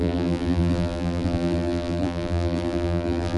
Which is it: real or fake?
fake